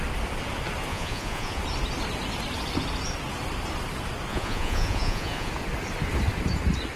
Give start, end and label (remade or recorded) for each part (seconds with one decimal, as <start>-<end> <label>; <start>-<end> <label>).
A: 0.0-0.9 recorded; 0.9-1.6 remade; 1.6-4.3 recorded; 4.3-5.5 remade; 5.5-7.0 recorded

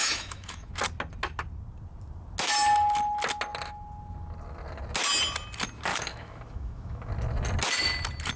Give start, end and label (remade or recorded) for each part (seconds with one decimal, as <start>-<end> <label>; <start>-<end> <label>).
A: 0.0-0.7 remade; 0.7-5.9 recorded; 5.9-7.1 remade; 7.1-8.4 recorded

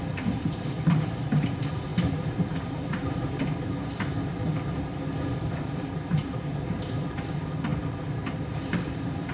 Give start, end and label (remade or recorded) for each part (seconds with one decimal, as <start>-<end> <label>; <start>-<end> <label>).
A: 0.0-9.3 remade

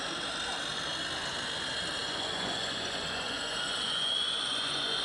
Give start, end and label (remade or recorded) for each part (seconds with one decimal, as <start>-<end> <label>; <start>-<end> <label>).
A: 0.0-2.0 recorded; 2.0-5.0 remade